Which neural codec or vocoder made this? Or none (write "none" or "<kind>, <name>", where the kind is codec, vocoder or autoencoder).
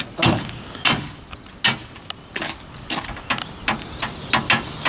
none